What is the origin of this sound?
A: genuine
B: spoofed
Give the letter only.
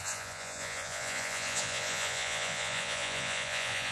B